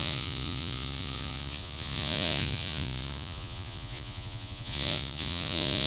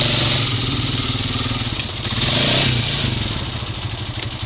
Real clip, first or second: second